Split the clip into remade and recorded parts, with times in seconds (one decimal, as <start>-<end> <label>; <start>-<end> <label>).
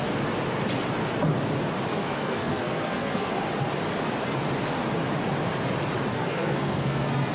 0.0-1.9 recorded; 1.9-3.3 remade; 3.3-6.1 recorded; 6.1-7.3 remade